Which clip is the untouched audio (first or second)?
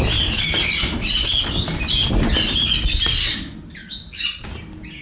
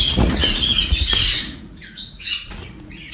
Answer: first